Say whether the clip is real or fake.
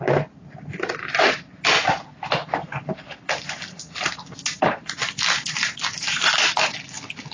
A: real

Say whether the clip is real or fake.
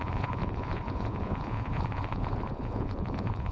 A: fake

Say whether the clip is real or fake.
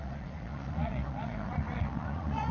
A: fake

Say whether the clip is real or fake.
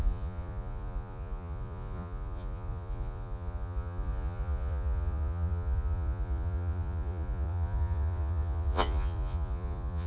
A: fake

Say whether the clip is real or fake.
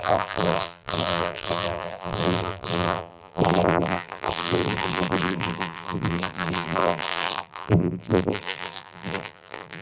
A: fake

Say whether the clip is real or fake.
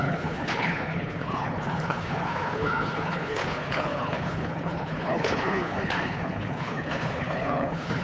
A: fake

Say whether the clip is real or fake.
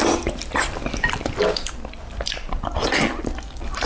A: real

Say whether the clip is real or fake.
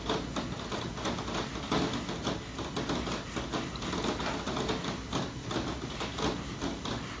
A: real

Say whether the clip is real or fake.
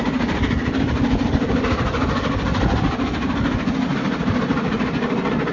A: real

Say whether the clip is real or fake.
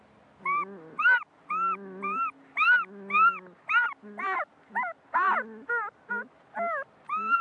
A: real